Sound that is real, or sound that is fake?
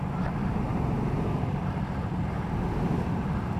real